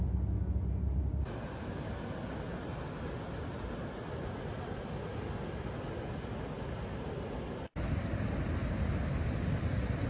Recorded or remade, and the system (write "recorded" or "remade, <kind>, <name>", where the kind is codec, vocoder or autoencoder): recorded